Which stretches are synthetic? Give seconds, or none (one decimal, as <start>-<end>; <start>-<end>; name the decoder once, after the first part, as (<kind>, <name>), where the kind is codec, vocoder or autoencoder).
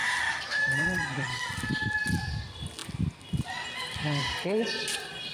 0.0-1.4 (vocoder, BigVGAN v2)